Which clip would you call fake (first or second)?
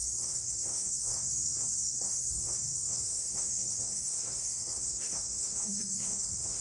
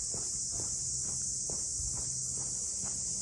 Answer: first